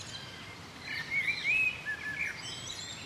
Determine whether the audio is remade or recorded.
recorded